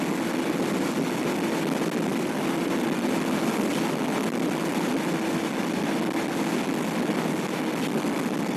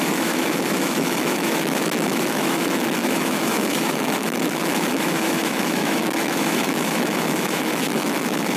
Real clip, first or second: first